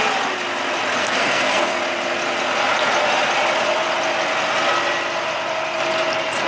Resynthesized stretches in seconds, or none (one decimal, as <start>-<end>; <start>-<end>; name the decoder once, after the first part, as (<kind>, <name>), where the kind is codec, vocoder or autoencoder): 1.0-1.8 (codec, SNAC)